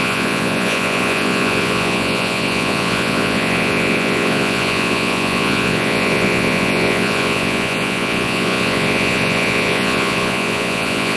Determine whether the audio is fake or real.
fake